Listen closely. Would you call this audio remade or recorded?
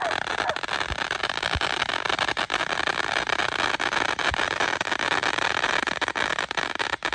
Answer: recorded